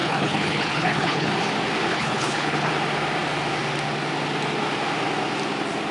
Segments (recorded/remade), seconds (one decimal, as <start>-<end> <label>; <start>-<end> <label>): 0.0-1.3 remade; 1.3-1.9 recorded; 1.9-2.7 remade; 2.7-5.9 recorded